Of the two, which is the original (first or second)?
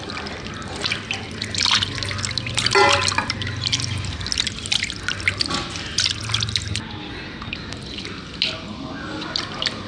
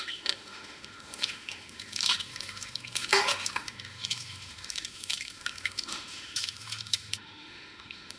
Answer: first